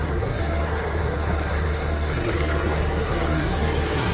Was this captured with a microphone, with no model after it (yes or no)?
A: no